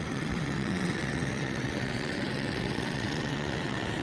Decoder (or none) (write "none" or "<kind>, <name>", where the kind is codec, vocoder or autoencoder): vocoder, WaveNeXt